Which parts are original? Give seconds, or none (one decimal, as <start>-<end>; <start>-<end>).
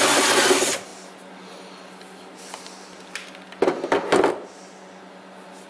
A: 0.0-5.7